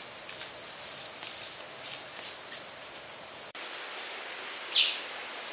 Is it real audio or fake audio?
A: real